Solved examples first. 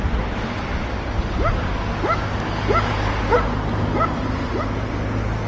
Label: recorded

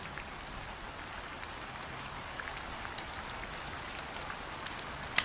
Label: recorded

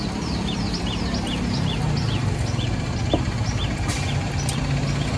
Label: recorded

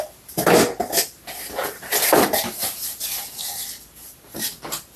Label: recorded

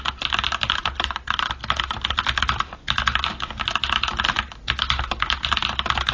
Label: recorded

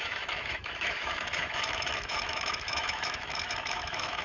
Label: remade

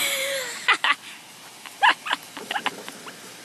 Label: recorded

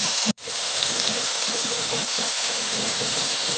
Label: remade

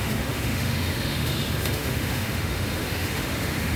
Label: remade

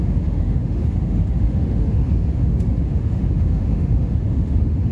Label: remade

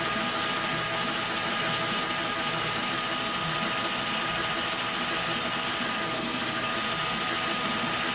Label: recorded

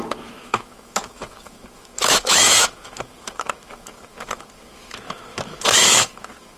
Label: remade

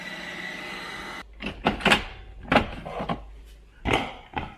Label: recorded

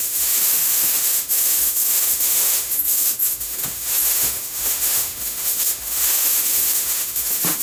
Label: remade